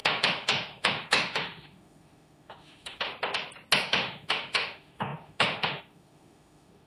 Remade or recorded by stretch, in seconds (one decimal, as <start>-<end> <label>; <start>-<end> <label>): 0.0-3.1 remade; 3.1-3.8 recorded; 3.8-6.9 remade